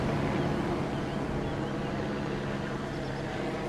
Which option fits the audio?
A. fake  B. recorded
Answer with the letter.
B